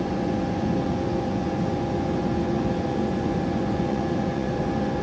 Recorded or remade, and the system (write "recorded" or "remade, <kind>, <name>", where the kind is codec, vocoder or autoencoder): remade, vocoder, Vocos